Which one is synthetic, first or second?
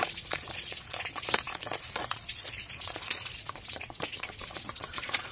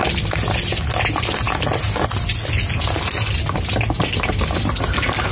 first